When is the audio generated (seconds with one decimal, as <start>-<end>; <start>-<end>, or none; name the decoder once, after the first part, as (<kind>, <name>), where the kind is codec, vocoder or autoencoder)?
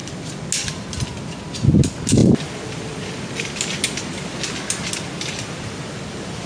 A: none